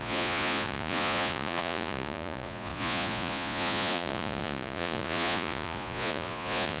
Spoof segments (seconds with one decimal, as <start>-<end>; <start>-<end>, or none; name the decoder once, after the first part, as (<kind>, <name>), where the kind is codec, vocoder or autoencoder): 0.0-6.8 (vocoder, Vocos)